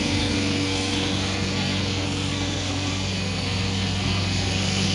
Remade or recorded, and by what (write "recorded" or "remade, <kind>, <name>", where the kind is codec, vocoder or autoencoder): remade, codec, SNAC